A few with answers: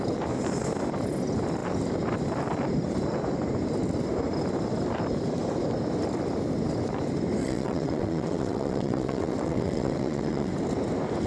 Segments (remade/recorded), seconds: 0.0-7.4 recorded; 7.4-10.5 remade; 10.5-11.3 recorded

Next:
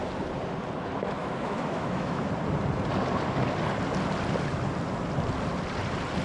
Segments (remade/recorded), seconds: 0.0-1.2 recorded; 1.2-2.3 remade; 2.3-6.2 recorded